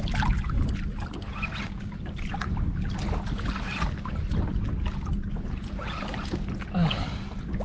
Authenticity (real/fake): real